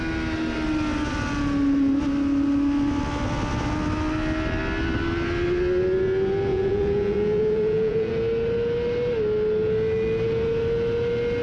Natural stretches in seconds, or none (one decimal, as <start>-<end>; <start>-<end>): 0.0-6.5; 8.1-11.4